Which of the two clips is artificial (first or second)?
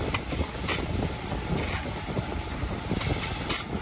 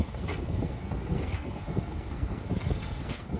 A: second